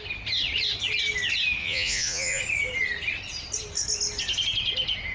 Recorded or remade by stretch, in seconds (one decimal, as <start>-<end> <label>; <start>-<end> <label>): 0.0-1.6 recorded; 1.6-2.4 remade; 2.4-5.1 recorded